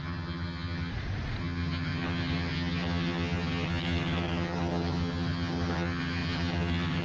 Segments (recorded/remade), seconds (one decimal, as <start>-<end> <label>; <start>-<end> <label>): 0.0-0.9 remade; 0.9-1.4 recorded; 1.4-7.0 remade